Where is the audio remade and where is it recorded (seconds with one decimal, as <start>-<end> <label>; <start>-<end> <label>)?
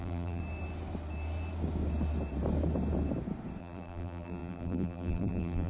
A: 0.0-0.4 remade; 0.4-3.6 recorded; 3.6-5.7 remade